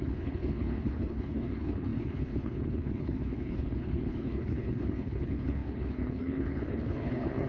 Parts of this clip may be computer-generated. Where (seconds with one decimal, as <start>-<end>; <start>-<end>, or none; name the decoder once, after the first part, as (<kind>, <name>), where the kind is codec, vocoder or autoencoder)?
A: 0.0-7.5 (codec, HILCodec)